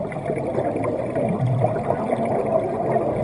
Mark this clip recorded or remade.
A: recorded